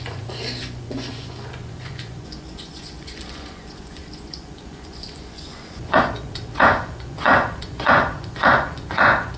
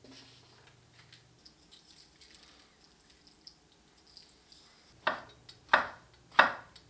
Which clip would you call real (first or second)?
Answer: second